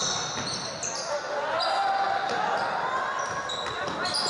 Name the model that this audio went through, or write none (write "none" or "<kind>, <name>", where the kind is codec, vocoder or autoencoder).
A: none